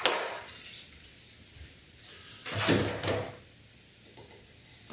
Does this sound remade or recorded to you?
recorded